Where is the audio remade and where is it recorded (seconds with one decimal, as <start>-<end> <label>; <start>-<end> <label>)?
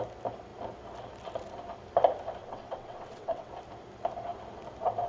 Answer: 0.0-2.4 recorded; 2.4-3.5 remade; 3.5-5.1 recorded